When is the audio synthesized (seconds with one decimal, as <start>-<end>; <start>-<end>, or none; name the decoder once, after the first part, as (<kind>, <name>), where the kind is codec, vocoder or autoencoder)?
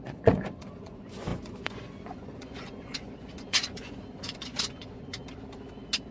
0.0-5.2 (vocoder, Vocos)